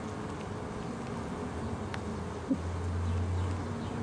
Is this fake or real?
real